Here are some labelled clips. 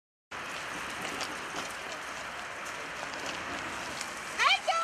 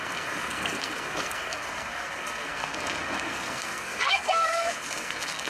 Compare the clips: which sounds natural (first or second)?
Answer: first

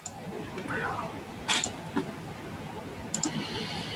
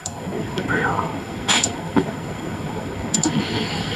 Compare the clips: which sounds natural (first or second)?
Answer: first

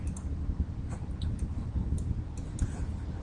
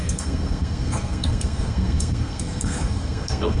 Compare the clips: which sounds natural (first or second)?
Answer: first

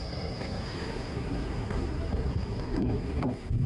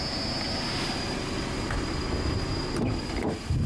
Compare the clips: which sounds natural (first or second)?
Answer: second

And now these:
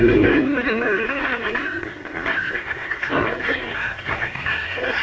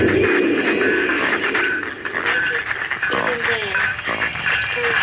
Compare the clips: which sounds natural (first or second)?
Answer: second